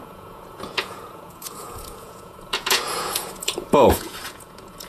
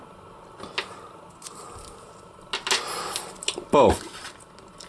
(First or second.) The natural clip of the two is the second